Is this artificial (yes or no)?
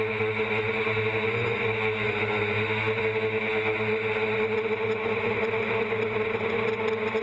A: no